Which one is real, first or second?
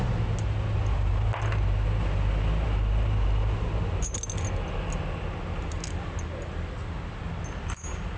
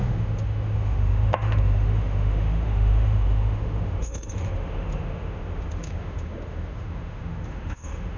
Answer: first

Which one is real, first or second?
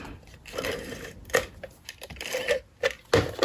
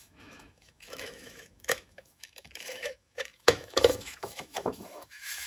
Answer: first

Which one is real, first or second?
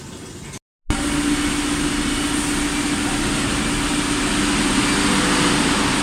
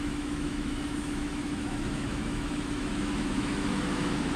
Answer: first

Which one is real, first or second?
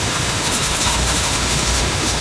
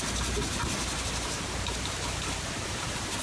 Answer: second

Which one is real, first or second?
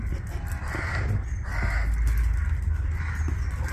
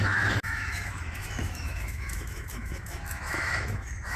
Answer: first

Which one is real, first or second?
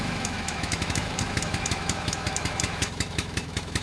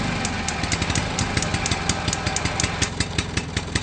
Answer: second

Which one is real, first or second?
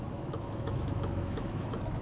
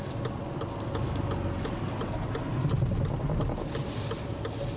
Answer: second